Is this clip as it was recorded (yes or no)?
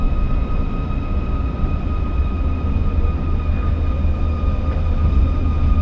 yes